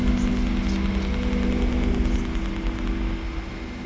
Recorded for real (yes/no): yes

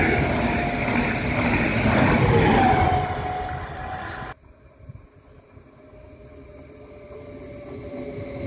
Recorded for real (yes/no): yes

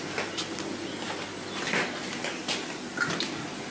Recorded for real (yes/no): yes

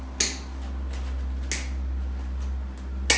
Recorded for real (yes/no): yes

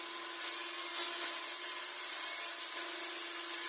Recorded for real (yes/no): yes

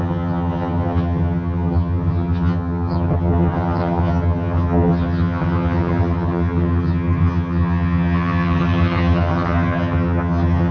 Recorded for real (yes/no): no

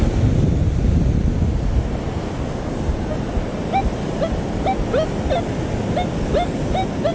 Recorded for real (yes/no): yes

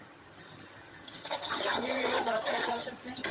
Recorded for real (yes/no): no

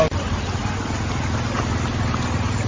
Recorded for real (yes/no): yes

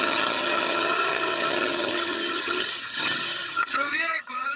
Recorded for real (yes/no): no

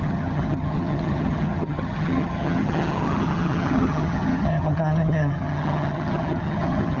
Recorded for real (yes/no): no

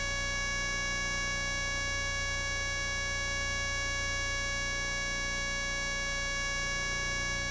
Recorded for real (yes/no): yes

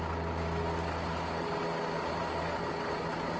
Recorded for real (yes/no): yes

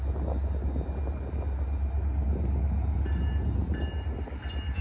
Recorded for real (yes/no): yes